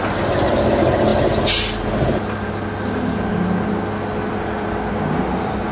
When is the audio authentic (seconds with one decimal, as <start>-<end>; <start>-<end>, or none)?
0.0-5.7